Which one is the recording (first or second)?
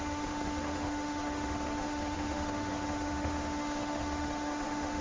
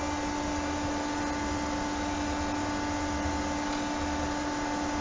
second